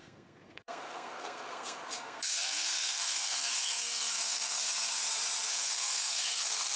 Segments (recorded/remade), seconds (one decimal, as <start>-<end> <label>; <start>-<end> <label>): 0.0-5.0 remade; 5.0-5.5 recorded; 5.5-6.8 remade